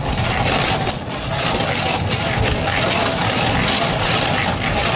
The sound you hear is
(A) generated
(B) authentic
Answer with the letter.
B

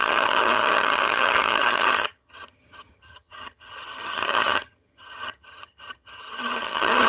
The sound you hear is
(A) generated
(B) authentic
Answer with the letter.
A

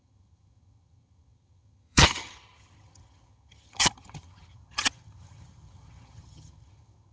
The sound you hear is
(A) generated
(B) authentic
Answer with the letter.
A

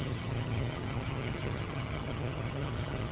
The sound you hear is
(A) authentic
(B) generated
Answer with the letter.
B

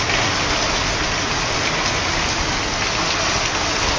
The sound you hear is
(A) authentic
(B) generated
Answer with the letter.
A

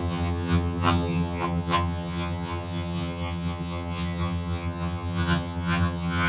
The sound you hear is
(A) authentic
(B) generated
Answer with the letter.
B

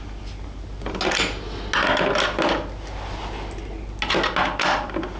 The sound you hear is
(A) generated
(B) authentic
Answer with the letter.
B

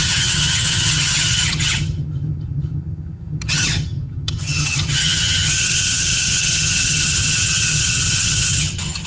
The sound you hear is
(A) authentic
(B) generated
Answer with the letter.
B